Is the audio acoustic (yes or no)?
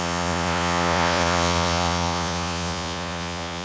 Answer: no